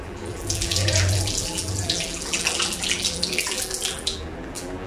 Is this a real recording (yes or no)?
no